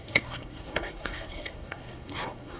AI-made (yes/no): yes